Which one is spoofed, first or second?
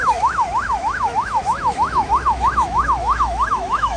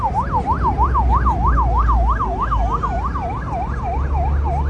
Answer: first